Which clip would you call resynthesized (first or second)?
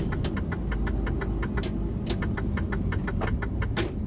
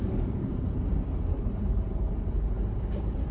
second